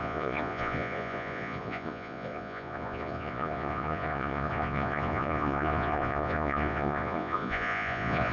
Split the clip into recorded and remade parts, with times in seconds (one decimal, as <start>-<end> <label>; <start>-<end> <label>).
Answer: 0.0-8.3 remade